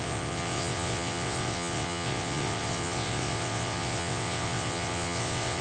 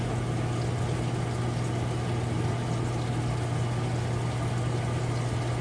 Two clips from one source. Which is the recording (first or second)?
second